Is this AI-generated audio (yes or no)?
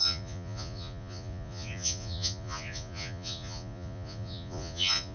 yes